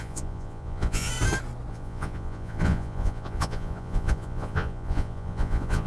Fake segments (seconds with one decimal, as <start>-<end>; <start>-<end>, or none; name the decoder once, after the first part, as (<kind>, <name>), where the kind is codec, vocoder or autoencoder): 0.0-1.1 (vocoder, Vocos); 1.7-5.9

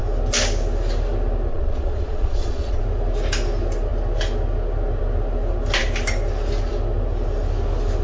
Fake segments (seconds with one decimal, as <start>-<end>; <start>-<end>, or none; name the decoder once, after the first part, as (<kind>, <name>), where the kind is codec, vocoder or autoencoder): 1.5-2.8 (vocoder, Vocos)

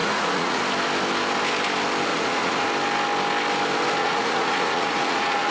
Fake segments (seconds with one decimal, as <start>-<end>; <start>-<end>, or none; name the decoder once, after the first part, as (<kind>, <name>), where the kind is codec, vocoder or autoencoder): 0.0-0.6 (vocoder, Vocos); 2.1-2.7; 4.0-5.5

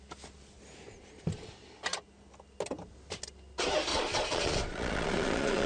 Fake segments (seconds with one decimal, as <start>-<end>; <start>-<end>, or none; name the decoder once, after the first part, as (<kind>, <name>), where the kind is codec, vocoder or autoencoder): 3.9-5.7 (vocoder, Vocos)